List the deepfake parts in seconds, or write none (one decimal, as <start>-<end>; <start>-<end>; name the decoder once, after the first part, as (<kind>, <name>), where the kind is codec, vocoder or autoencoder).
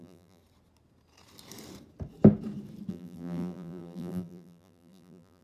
0.0-0.4 (vocoder, BigVGAN v2); 2.9-5.4